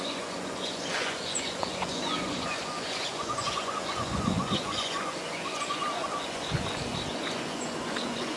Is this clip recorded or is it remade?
remade